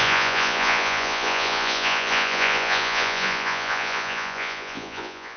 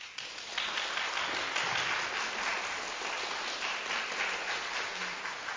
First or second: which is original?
second